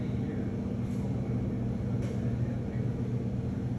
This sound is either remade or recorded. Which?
recorded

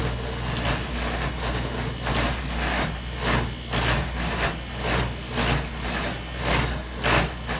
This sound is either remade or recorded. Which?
recorded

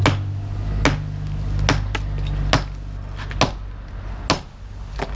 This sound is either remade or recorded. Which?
recorded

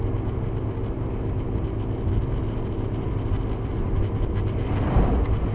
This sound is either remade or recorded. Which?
recorded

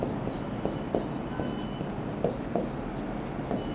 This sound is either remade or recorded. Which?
recorded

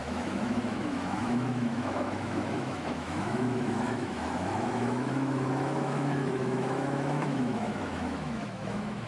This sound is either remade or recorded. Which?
remade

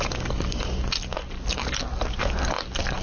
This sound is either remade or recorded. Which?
recorded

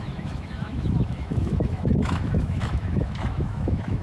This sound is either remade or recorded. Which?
remade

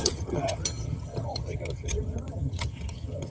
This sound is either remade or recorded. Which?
remade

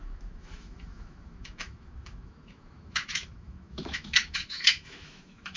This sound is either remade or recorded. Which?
remade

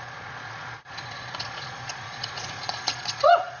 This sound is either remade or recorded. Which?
remade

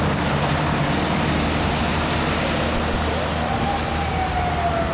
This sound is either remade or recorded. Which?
recorded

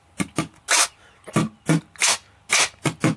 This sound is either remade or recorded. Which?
recorded